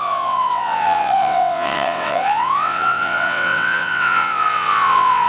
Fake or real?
fake